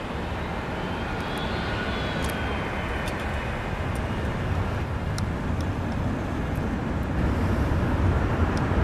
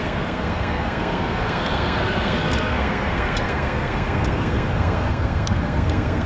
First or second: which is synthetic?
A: second